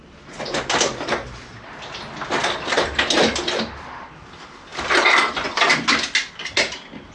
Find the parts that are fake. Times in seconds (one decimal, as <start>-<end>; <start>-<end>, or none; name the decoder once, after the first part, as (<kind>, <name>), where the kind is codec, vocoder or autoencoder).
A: none